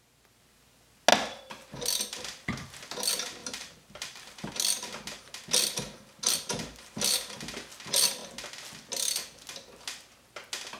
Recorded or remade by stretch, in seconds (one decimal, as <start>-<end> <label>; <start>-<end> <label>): 0.0-3.4 recorded; 3.4-4.5 remade; 4.5-10.8 recorded